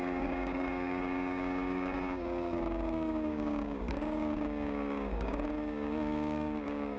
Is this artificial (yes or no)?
yes